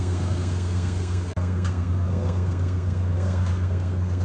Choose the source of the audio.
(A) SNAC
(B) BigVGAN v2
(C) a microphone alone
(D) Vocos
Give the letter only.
A